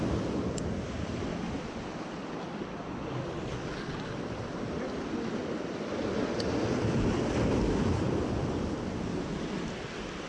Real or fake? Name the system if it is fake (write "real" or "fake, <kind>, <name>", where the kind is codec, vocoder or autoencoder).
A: real